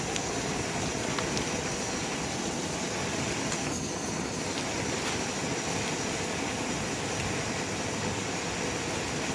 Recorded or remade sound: recorded